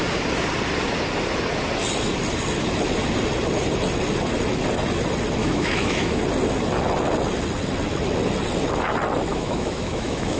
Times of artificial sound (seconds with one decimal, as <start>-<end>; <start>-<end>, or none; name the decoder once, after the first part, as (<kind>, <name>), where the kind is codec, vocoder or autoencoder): 5.4-6.2 (autoencoder, DAC-VAE); 9.3-10.4